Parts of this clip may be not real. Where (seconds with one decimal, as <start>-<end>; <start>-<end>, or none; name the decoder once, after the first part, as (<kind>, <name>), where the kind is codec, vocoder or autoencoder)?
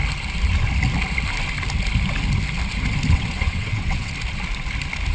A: 3.1-4.1 (vocoder, WaveNeXt)